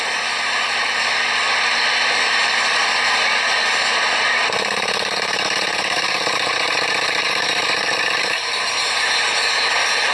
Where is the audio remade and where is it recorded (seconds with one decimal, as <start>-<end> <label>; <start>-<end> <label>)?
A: 0.0-4.4 recorded; 4.4-8.7 remade; 8.7-10.1 recorded